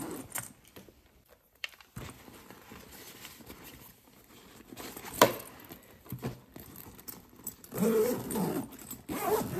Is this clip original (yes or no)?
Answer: no